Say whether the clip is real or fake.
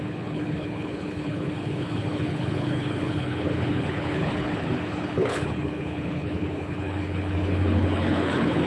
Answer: fake